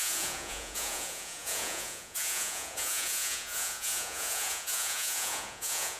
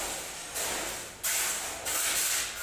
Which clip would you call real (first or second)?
second